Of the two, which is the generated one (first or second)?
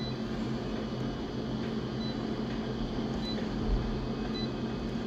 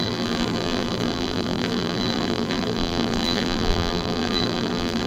second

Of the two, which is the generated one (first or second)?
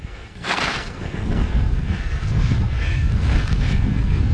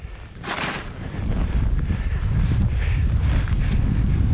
first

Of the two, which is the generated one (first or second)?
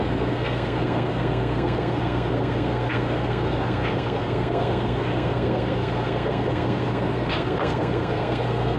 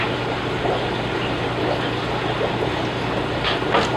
first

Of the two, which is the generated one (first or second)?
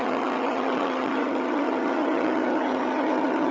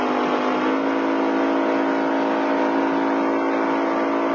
first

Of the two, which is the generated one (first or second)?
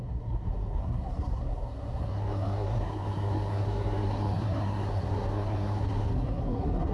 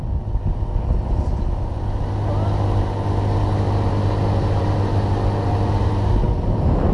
first